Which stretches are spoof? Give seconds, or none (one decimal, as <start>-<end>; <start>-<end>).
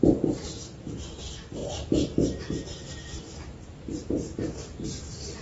1.6-4.8